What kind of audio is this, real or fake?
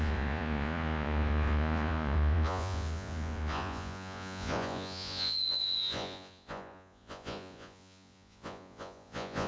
fake